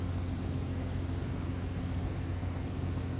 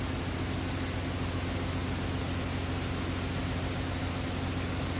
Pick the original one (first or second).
second